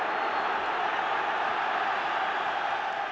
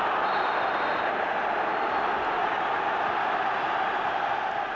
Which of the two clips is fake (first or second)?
second